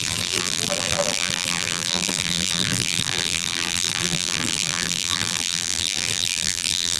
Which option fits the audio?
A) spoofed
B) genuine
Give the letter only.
A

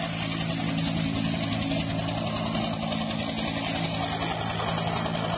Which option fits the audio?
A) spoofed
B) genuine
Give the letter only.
B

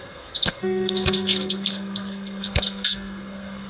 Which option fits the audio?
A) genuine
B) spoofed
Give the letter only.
B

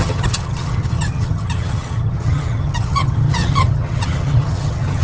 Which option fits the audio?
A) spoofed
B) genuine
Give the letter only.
A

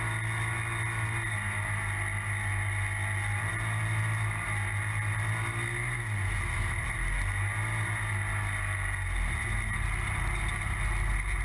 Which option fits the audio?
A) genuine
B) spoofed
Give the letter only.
A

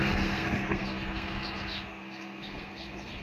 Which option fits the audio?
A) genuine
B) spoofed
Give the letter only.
B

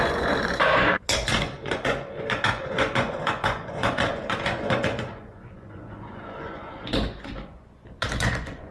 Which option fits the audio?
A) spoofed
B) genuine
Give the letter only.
A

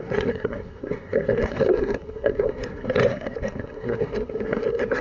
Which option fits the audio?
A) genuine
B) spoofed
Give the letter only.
B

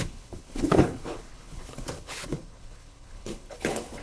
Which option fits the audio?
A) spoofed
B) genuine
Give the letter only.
A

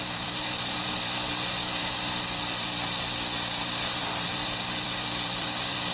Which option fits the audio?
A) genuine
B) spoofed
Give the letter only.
B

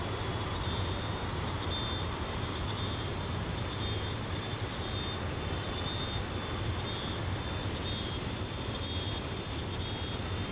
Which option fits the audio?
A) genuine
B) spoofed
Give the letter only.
A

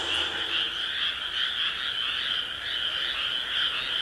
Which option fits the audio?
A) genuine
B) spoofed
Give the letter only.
A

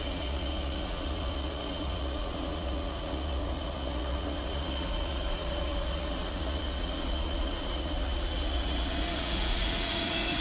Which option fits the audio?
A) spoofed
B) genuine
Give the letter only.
A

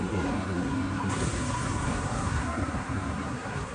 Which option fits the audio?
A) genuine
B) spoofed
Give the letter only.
B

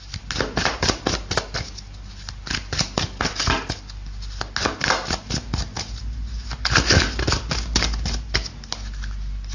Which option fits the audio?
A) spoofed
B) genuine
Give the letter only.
B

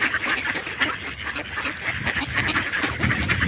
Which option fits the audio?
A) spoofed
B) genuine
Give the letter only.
B